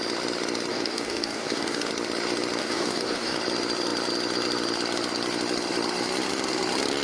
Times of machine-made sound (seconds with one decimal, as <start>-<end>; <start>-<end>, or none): 0.7-1.9; 2.6-3.4